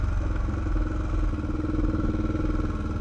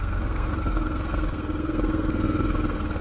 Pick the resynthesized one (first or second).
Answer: second